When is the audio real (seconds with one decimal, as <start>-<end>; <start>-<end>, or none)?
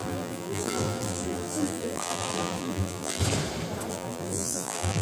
3.2-3.9